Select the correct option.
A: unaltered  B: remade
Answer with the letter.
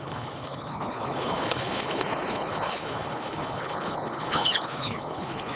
B